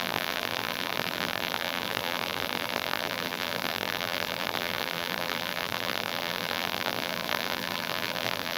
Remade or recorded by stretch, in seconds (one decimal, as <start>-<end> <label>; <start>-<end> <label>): 0.0-8.6 remade